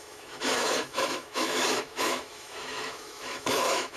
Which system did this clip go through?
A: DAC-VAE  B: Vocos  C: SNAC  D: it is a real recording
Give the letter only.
A